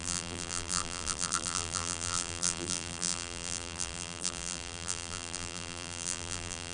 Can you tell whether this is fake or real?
fake